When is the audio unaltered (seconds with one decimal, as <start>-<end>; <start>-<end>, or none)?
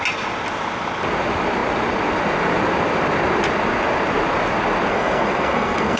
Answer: 0.0-4.9